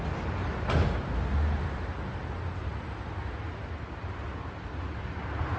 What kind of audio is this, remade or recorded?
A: recorded